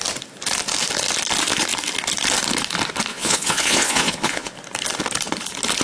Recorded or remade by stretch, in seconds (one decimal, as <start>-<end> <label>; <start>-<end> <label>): 0.0-3.1 recorded; 3.1-4.5 remade; 4.5-5.8 recorded